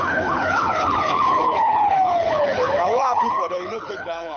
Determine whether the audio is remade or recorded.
remade